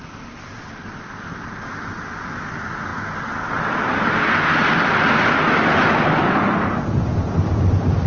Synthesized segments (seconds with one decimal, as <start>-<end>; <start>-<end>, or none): none